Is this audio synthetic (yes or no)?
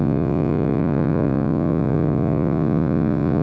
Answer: yes